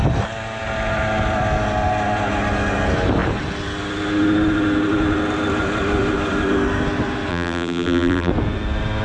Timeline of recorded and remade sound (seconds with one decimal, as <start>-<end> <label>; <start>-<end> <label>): 0.0-7.3 recorded; 7.3-8.3 remade; 8.3-9.0 recorded